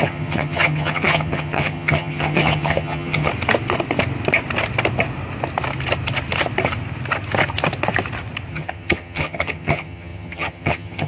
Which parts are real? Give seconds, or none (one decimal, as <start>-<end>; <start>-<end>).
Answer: 3.3-8.5